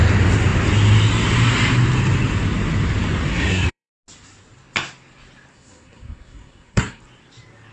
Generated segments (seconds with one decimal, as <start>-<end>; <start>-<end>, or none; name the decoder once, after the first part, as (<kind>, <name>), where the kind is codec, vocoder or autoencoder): 3.3-3.9 (codec, SNAC); 5.5-7.0